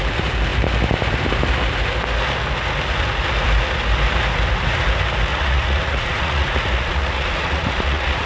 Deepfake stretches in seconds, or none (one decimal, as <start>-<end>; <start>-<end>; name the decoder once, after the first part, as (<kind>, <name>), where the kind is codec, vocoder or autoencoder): 5.3-8.3 (vocoder, Vocos)